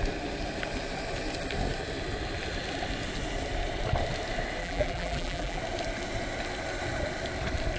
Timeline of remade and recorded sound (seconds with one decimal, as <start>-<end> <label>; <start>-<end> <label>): 0.0-4.6 recorded; 4.6-5.6 remade; 5.6-7.8 recorded